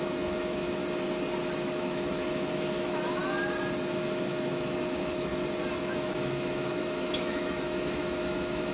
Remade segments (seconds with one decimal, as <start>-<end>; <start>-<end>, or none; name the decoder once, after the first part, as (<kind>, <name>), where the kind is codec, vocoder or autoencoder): 0.0-0.8 (autoencoder, DAC-VAE); 1.6-3.2; 4.3-5.3; 5.8-8.7